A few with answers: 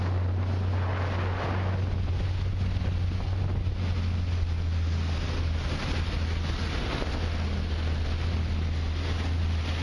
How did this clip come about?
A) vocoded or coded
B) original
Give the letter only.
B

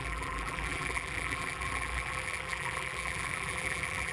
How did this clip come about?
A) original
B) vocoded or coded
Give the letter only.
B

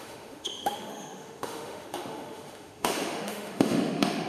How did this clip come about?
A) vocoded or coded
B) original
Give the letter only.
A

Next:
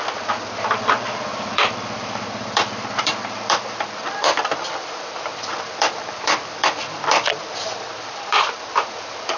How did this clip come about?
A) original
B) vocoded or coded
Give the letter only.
B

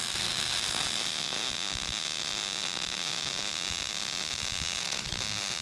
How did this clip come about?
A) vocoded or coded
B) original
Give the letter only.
B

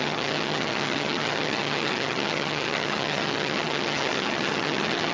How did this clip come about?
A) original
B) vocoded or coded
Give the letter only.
B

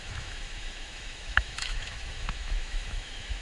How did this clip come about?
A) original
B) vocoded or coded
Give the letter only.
B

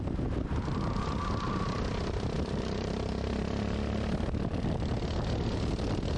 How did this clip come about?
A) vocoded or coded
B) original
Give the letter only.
B